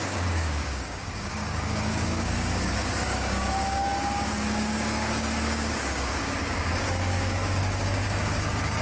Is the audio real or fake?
fake